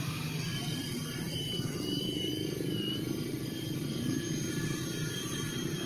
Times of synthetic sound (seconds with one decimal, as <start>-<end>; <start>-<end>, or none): 0.0-2.3; 4.5-5.9